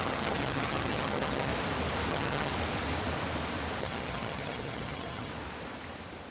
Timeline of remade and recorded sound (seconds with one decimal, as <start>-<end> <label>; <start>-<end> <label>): 0.0-1.5 remade; 1.5-2.1 recorded; 2.1-2.5 remade; 2.5-3.8 recorded; 3.8-5.3 remade; 5.3-6.3 recorded